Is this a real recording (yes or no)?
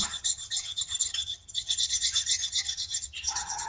no